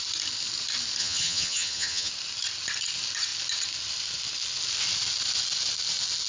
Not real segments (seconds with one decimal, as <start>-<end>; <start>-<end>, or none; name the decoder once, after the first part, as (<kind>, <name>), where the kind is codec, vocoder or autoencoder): 1.0-2.1 (vocoder, HiFi-GAN)

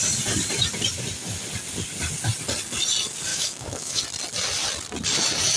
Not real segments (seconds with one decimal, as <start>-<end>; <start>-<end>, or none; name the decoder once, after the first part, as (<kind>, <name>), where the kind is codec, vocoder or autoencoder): 3.3-4.0 (autoencoder, DAC-VAE)

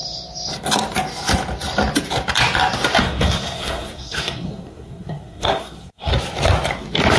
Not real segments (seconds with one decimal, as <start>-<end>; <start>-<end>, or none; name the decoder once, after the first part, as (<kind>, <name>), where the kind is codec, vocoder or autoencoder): 3.0-6.1 (codec, SNAC)

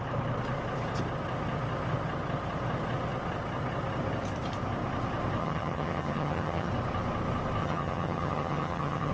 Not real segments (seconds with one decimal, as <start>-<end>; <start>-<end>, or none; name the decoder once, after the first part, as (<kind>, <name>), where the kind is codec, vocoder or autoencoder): 5.4-6.7 (vocoder, HiFi-GAN); 7.6-9.1

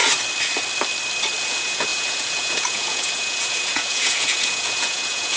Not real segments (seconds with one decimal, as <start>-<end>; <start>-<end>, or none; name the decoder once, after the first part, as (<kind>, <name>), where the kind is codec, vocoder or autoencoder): 1.4-5.4 (vocoder, Vocos)

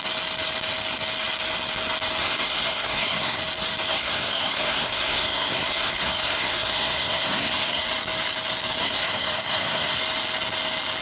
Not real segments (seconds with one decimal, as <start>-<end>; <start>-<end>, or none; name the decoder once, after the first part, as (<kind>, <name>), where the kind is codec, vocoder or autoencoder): 2.2-3.4 (codec, SNAC); 3.9-7.8; 8.8-10.0